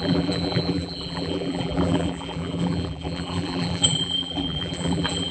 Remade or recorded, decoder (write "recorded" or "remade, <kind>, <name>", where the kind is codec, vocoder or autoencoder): remade, vocoder, BigVGAN v2